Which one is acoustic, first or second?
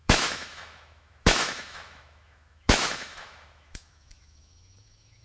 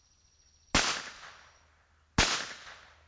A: second